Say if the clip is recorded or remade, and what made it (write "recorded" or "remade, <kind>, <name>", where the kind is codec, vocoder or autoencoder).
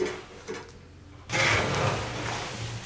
recorded